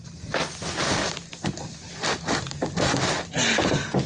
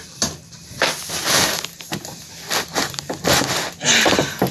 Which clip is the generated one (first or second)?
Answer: first